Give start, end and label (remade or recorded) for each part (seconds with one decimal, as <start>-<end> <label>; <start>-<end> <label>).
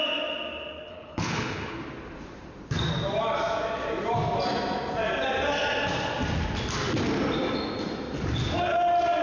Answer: 0.0-0.9 recorded; 0.9-1.8 remade; 1.8-9.2 recorded